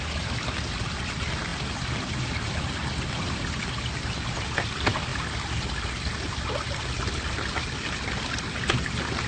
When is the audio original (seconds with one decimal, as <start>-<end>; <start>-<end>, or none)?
0.0-9.3